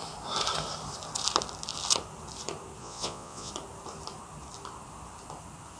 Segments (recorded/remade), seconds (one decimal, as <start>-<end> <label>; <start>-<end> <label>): 0.0-2.8 recorded; 2.8-3.5 remade; 3.5-5.8 recorded

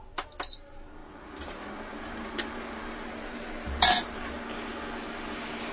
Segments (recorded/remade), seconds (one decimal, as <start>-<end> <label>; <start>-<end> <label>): 0.0-1.0 recorded; 1.0-4.4 remade; 4.4-5.7 recorded

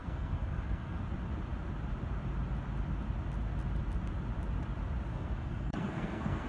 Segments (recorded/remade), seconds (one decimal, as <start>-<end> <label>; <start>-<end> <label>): 0.0-1.0 remade; 1.0-5.1 recorded; 5.1-6.5 remade

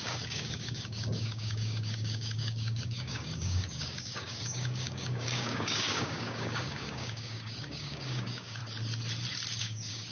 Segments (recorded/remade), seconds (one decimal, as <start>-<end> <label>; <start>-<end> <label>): 0.0-8.6 remade; 8.6-9.6 recorded; 9.6-10.1 remade

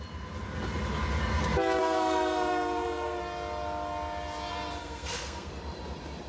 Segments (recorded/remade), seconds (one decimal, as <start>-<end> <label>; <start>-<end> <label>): 0.0-1.8 recorded; 1.8-3.2 remade; 3.2-4.8 recorded; 4.8-5.5 remade; 5.5-6.3 recorded

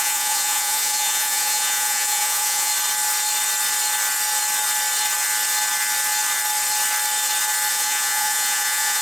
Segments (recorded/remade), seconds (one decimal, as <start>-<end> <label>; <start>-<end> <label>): 0.0-2.7 remade; 2.7-7.7 recorded; 7.7-9.0 remade

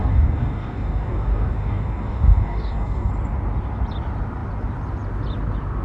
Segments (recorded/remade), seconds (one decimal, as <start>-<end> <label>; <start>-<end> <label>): 0.0-3.1 remade; 3.1-5.8 recorded

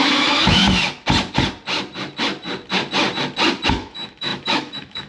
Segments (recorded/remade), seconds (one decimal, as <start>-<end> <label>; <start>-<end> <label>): 0.0-0.6 remade; 0.6-3.7 recorded; 3.7-5.1 remade